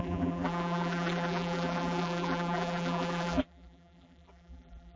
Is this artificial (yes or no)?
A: yes